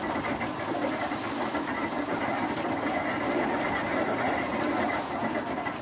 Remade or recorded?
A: recorded